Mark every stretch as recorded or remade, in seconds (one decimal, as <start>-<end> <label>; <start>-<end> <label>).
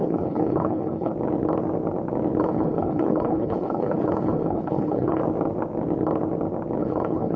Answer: 0.0-1.1 remade; 1.1-2.4 recorded; 2.4-5.2 remade; 5.2-6.8 recorded; 6.8-7.4 remade